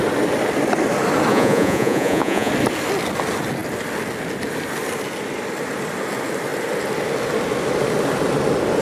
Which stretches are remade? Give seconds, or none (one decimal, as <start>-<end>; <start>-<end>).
1.3-2.5